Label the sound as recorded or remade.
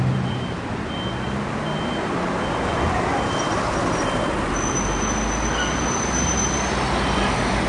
recorded